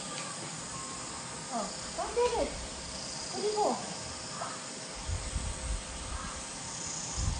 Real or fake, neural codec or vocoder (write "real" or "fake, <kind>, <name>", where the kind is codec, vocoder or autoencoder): real